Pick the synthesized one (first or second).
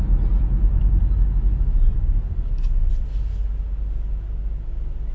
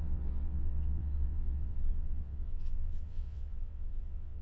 second